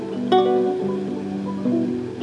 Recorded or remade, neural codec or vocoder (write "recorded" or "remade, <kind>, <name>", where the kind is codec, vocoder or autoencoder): recorded